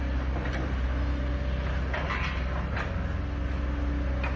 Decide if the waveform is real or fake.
real